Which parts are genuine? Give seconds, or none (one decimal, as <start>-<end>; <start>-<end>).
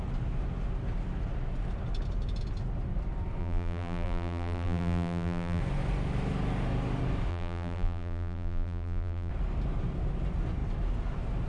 0.0-3.4; 5.6-7.3; 9.3-11.5